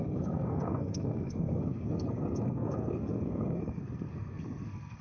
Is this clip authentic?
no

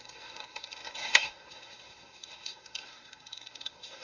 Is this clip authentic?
no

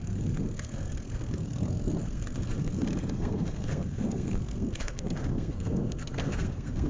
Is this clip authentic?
no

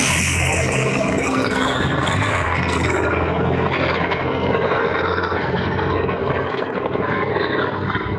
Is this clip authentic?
no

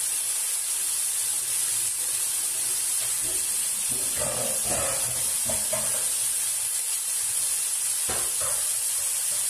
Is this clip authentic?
yes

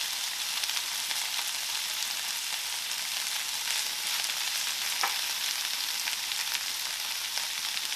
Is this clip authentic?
yes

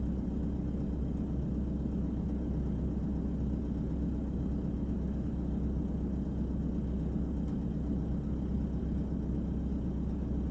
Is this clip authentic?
yes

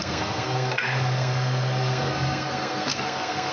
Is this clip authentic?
no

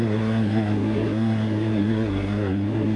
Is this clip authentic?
no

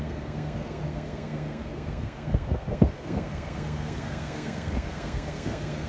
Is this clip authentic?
no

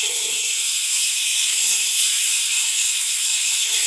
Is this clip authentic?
no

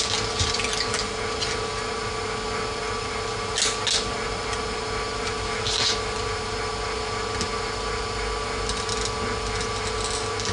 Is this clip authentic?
yes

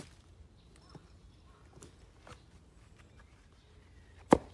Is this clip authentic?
yes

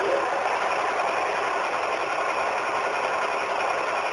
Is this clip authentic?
yes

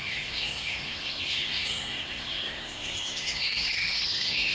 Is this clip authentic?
no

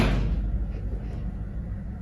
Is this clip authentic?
yes